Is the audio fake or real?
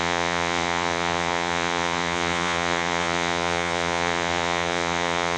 fake